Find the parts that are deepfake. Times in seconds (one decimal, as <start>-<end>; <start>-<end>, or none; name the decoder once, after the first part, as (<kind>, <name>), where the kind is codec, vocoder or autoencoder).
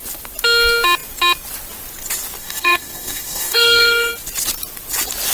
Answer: 2.4-4.1 (codec, DAC)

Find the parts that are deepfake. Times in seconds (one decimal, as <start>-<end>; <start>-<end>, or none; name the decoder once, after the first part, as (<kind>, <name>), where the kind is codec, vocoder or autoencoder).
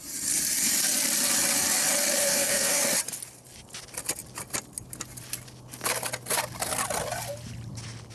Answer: 2.2-2.8 (codec, SNAC)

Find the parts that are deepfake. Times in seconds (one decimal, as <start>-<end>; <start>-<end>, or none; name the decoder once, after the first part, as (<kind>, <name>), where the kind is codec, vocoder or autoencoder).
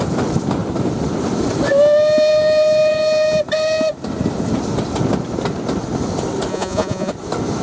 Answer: 6.5-7.1 (vocoder, Vocos)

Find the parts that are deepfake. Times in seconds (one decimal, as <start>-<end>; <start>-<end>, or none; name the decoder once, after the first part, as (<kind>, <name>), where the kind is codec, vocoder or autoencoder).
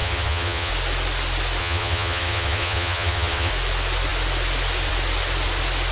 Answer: 0.0-0.7 (vocoder, HiFi-GAN); 1.6-3.5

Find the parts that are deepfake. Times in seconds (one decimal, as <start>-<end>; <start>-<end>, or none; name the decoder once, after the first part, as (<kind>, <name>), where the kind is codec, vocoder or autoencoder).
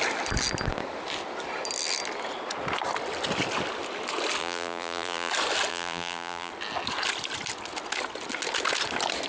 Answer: 4.4-5.3 (vocoder, BigVGAN v2); 5.7-6.5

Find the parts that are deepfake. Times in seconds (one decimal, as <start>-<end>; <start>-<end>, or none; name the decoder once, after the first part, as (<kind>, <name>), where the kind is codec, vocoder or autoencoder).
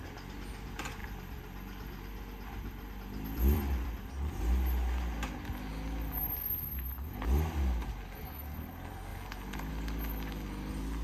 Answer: 1.0-4.1 (vocoder, BigVGAN v2); 9.1-9.7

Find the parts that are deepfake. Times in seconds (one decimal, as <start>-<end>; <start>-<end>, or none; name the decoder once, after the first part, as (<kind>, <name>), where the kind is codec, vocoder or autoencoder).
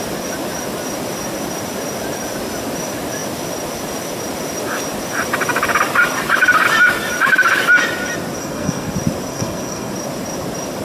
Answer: 8.4-8.9 (codec, SNAC); 9.3-9.9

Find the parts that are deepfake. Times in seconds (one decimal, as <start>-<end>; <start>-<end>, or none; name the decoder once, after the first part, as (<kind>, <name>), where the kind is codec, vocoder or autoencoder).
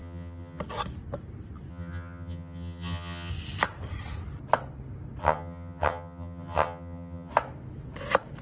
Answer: 0.0-0.6 (vocoder, HiFi-GAN); 1.7-3.3; 5.2-7.3